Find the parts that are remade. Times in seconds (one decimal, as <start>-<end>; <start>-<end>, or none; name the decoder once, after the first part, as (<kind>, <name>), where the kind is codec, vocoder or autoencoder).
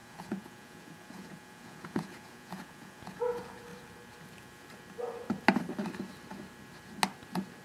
0.0-3.2 (vocoder, Vocos)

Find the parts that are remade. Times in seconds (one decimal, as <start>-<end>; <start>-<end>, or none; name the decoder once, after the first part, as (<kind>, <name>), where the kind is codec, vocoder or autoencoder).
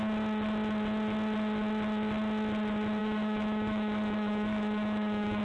3.0-5.4 (autoencoder, DAC-VAE)